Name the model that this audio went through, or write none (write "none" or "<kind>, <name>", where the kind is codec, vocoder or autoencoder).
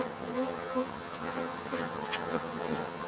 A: vocoder, HiFi-GAN